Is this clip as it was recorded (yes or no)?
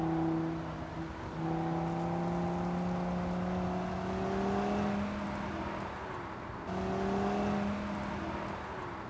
yes